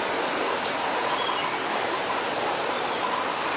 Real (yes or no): yes